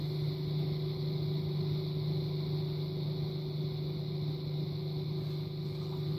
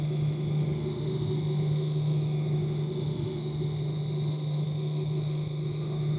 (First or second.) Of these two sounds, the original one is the first